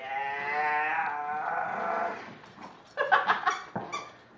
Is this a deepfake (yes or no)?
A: no